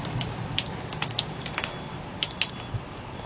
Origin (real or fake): real